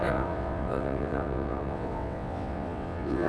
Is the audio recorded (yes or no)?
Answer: no